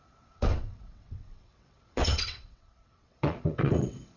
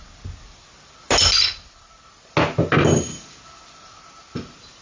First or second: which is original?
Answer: second